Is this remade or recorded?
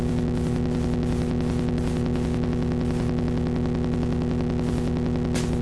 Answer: recorded